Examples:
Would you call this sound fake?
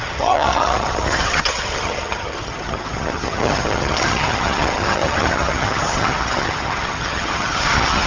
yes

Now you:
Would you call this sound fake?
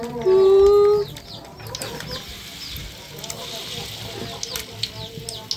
no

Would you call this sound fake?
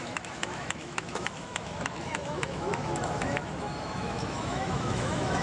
yes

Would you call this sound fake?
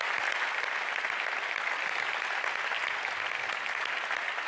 no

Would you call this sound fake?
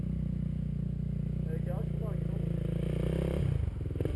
no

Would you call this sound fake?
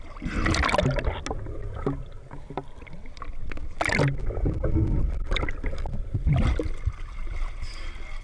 no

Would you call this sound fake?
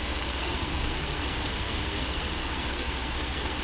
yes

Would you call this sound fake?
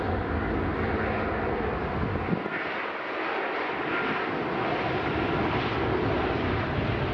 no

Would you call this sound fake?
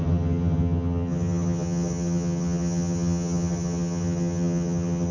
yes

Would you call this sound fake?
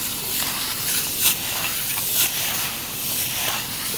no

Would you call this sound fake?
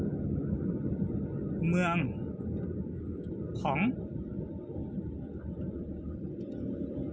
no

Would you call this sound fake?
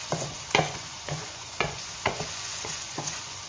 yes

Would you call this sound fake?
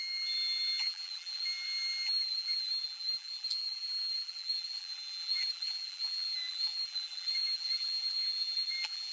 yes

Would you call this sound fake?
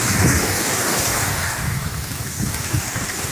yes